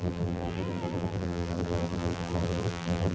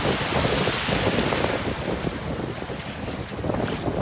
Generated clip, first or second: first